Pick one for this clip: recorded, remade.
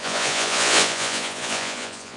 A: remade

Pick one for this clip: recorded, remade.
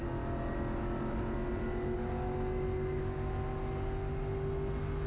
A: recorded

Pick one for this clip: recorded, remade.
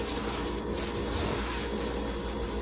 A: recorded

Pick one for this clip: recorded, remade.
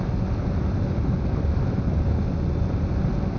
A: recorded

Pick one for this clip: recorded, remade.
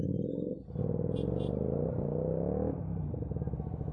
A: recorded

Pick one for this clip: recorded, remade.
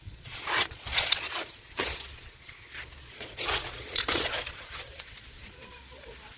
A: remade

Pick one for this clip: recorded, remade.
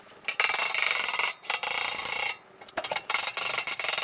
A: recorded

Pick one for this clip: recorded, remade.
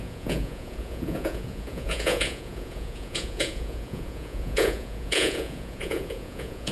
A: remade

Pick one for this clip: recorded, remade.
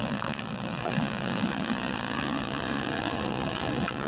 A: remade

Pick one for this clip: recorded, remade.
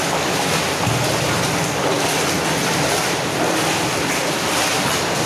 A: recorded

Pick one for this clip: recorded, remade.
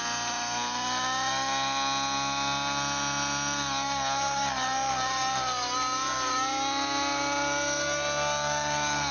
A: recorded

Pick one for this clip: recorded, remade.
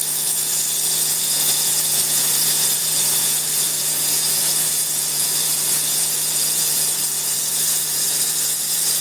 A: remade